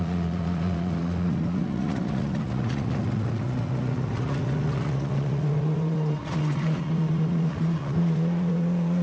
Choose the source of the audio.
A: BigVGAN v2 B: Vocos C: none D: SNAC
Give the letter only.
B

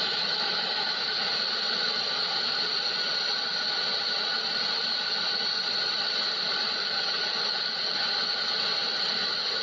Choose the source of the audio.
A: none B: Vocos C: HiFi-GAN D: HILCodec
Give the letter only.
A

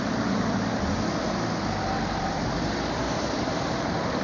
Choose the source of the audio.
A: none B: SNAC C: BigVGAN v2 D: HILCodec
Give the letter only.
C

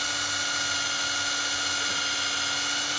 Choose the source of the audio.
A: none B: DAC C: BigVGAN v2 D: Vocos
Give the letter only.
A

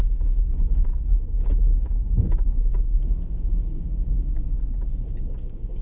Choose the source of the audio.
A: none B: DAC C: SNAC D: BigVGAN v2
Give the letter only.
B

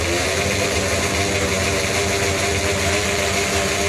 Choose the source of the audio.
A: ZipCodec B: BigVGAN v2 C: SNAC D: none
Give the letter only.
D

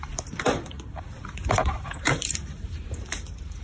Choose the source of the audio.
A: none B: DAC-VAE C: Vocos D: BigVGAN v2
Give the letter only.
D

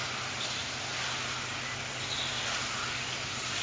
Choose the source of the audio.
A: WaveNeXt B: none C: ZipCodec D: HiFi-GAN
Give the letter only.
B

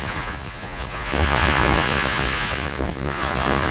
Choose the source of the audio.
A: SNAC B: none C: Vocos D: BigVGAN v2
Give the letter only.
C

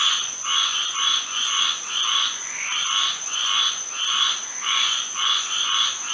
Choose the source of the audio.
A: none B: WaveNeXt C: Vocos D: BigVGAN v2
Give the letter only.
C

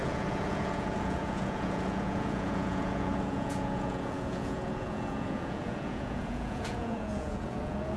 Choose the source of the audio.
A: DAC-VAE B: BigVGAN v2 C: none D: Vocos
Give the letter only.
D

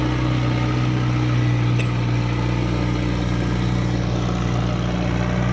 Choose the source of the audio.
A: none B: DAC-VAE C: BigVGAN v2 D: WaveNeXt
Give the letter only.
A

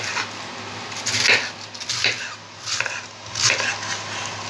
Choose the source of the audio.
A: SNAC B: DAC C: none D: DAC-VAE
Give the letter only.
C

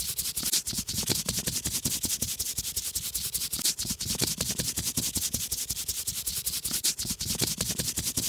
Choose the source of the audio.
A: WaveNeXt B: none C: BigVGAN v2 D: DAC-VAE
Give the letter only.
C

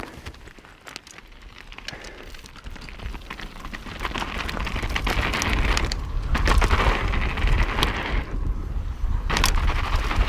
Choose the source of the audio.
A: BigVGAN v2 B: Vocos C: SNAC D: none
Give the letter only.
D